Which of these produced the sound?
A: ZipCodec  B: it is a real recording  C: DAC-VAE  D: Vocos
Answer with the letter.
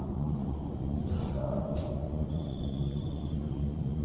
D